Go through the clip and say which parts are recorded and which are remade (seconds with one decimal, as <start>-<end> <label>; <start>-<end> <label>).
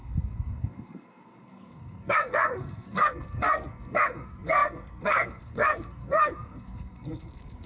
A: 0.0-7.7 remade